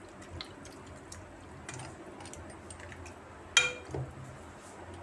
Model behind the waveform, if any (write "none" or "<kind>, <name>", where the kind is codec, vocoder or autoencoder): none